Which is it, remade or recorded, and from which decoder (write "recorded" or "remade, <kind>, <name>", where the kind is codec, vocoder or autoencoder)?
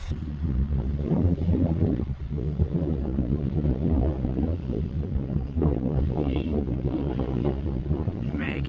remade, vocoder, Vocos